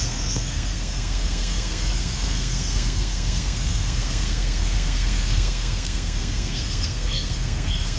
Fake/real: fake